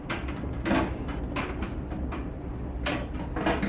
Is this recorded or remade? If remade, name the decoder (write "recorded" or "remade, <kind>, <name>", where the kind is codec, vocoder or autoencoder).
recorded